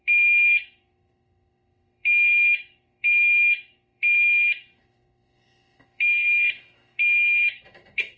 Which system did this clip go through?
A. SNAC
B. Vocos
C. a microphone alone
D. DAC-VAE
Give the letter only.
D